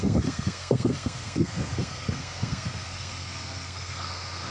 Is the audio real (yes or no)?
no